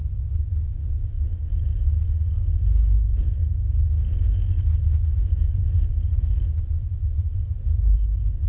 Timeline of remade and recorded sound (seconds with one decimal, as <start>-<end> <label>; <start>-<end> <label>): 0.0-5.1 recorded; 5.1-6.2 remade; 6.2-8.5 recorded